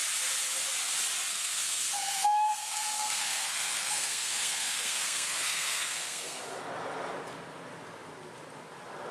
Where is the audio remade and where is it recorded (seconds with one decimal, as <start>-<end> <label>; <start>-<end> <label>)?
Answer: 0.0-1.3 recorded; 1.3-6.4 remade; 6.4-9.1 recorded